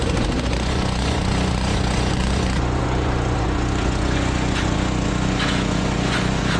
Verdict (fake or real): fake